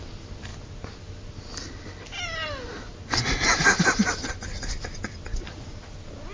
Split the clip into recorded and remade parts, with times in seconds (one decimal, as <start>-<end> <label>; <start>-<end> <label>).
0.0-6.3 recorded